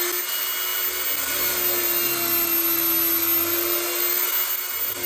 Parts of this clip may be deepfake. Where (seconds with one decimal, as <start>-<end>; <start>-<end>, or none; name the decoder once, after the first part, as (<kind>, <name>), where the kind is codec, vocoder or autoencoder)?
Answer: none